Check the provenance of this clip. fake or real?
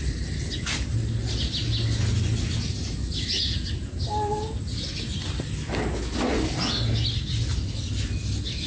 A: real